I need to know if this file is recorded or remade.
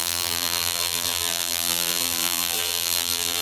remade